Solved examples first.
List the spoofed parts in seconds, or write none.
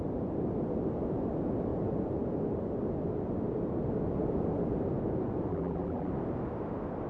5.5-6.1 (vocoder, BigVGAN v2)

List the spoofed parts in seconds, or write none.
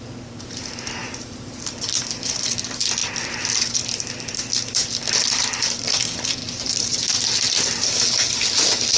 1.0-2.0 (vocoder, BigVGAN v2); 6.4-7.0